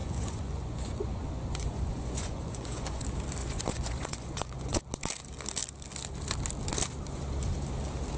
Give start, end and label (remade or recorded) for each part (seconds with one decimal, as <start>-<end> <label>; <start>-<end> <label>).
0.0-3.0 remade; 3.0-3.4 recorded; 3.4-4.8 remade; 4.8-8.2 recorded